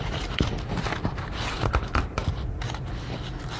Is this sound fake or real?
fake